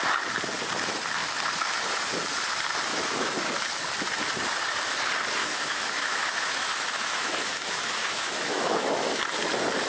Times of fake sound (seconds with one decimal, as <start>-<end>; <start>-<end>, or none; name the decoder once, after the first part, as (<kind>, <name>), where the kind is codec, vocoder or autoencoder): 2.9-3.5 (autoencoder, DAC-VAE); 5.4-9.2